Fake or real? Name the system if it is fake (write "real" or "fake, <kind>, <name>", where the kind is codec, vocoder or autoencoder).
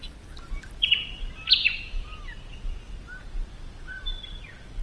real